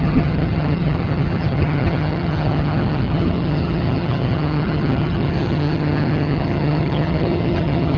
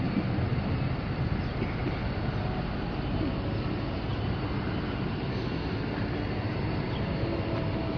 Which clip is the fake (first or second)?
first